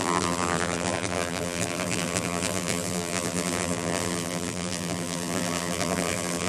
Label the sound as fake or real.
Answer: fake